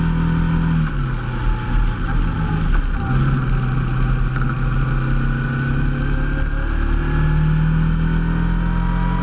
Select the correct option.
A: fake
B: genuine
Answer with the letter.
B